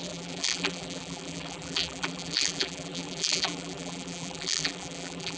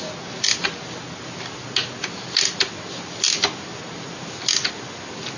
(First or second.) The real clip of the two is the second